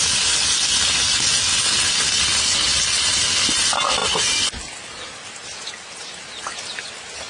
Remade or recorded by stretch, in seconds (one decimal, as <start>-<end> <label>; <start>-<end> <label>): 0.0-7.3 recorded